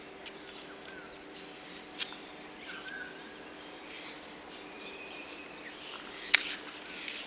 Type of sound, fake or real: real